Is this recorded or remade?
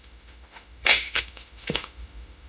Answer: remade